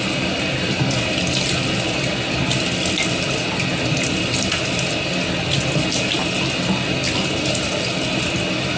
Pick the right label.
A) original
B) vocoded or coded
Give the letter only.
A